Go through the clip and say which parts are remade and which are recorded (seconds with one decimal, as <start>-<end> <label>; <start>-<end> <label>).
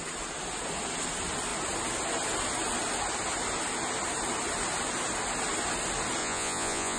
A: 0.0-6.2 recorded; 6.2-7.0 remade